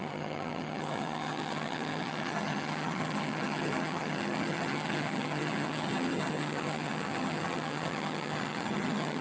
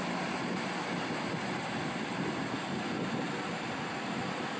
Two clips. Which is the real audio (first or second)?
second